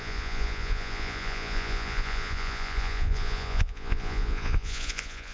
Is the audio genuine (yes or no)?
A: no